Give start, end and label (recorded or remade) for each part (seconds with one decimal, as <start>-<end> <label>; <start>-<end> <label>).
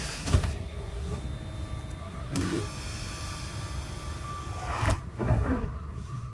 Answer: 0.0-1.2 remade; 1.2-2.0 recorded; 2.0-2.6 remade; 2.6-5.0 recorded; 5.0-6.3 remade